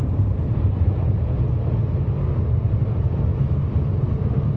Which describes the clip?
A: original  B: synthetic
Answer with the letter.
A